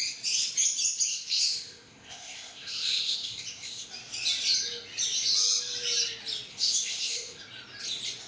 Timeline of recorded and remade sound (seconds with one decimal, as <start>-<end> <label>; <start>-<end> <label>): 0.0-1.1 recorded; 1.1-3.9 remade; 3.9-6.5 recorded; 6.5-7.4 remade; 7.4-8.3 recorded